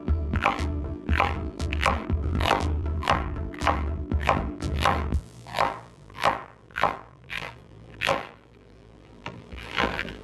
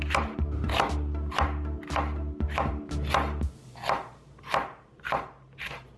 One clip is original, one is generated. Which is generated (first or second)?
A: first